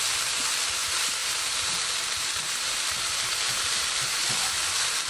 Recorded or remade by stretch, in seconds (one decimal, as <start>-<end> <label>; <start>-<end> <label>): 0.0-1.2 recorded; 1.2-4.3 remade; 4.3-5.1 recorded